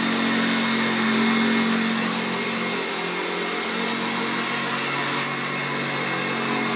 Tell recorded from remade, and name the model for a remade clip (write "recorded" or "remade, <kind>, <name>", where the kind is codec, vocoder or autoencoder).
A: recorded